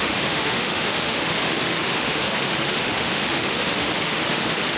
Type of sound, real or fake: fake